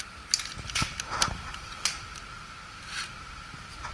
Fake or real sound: real